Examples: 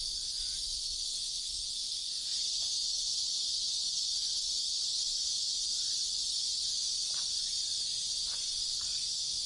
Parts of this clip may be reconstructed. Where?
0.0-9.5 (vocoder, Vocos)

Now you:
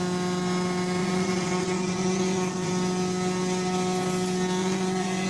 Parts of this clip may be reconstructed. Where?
1.0-2.7 (vocoder, Vocos); 4.6-5.3

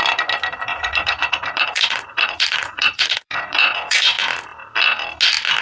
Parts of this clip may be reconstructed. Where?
0.7-4.1 (vocoder, Vocos)

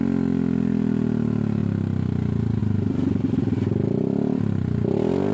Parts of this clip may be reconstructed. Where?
none